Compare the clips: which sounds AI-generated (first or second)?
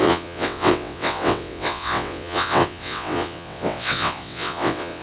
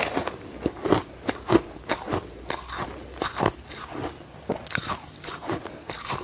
first